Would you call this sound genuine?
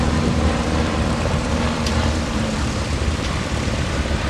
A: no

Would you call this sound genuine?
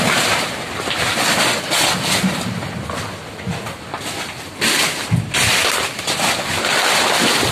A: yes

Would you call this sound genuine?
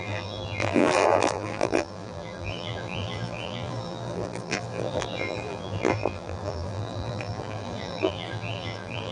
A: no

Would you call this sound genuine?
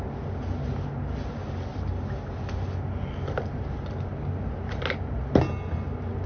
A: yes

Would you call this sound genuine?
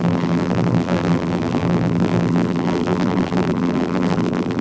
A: no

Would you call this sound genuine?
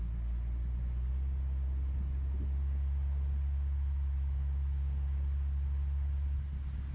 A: yes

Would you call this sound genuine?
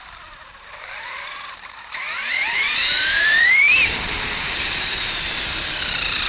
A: no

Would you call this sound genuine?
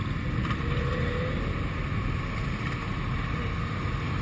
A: yes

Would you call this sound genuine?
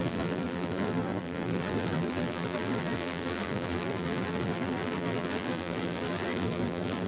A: no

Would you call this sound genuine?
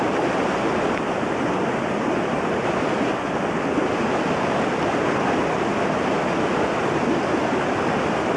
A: yes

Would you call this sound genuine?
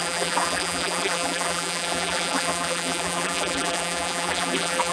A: no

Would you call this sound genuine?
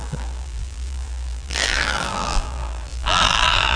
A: no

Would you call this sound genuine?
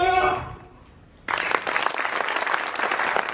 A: no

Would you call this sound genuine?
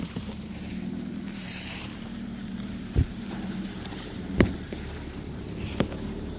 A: no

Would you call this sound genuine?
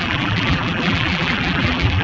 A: no